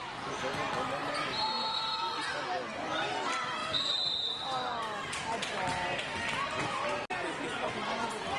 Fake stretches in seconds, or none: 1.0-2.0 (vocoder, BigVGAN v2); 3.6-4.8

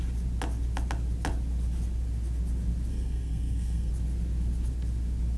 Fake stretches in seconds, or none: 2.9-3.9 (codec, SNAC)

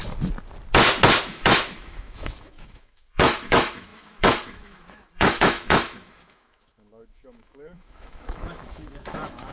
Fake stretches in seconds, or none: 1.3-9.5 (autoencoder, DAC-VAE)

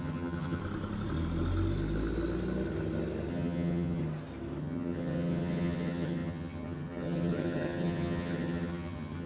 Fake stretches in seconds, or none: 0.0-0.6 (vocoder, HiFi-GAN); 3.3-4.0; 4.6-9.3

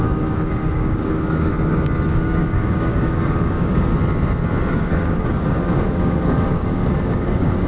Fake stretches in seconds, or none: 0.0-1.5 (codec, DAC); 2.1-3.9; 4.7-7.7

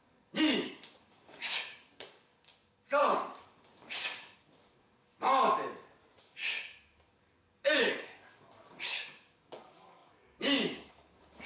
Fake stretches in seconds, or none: 0.0-5.3 (codec, DAC); 6.2-11.5

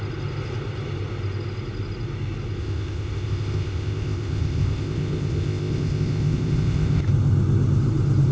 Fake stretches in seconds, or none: 2.6-7.0 (codec, ZipCodec)

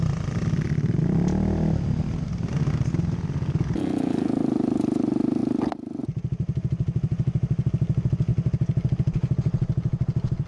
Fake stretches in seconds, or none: 5.4-6.0 (vocoder, BigVGAN v2)